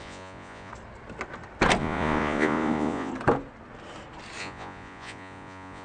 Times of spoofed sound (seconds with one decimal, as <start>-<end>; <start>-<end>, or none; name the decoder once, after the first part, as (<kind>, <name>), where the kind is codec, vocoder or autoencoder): 0.0-0.7 (vocoder, Vocos); 1.8-3.1; 4.4-5.8